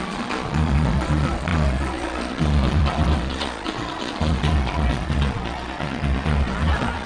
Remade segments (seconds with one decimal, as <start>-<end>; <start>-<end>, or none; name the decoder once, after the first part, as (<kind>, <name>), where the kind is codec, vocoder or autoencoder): 0.0-7.1 (vocoder, Vocos)